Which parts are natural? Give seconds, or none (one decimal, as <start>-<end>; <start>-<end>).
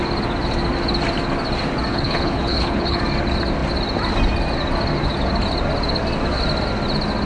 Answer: 0.0-1.9; 3.0-7.3